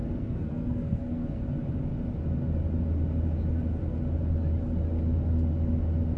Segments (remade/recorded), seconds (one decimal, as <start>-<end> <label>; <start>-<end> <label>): 0.0-1.4 remade; 1.4-6.2 recorded